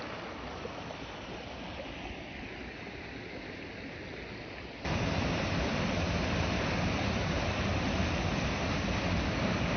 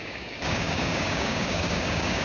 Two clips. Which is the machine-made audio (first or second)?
second